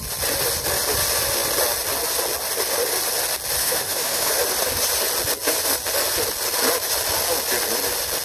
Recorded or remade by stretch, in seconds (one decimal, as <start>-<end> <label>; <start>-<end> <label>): 0.0-3.6 recorded; 3.6-4.3 remade; 4.3-8.2 recorded